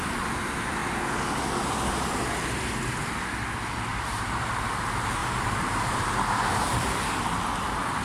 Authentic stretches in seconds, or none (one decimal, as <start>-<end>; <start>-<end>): 0.0-3.9; 4.5-5.2; 7.1-8.0